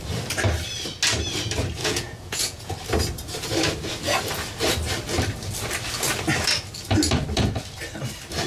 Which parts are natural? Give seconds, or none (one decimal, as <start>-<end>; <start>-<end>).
0.0-1.8; 2.7-8.5